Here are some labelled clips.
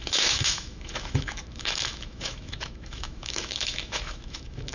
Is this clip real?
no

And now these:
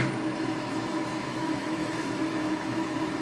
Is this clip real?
no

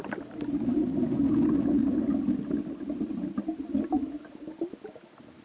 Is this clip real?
yes